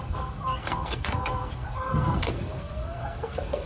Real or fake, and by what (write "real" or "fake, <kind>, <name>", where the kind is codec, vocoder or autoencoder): fake, codec, SNAC